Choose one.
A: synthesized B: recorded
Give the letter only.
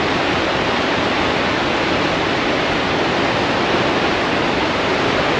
B